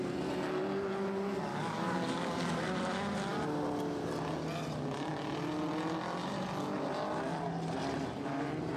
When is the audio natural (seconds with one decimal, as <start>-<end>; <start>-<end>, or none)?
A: 0.0-1.5; 2.6-8.8